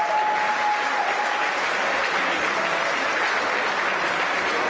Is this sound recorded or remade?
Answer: recorded